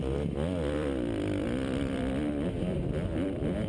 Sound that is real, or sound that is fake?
fake